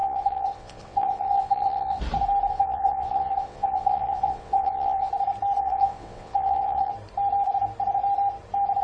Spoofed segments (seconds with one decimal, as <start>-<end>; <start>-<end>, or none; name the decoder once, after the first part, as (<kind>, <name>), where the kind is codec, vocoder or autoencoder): 0.0-2.0 (vocoder, WaveNeXt); 2.5-5.1; 5.6-6.9